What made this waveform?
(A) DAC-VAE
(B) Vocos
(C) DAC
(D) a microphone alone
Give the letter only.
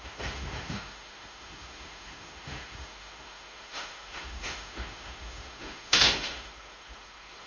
A